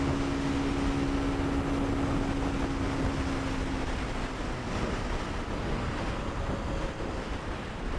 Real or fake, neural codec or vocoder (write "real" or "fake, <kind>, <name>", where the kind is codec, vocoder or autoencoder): real